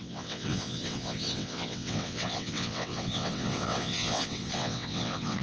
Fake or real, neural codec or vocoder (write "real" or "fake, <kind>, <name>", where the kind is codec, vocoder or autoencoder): fake, vocoder, WaveNeXt